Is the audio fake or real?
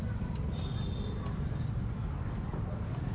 real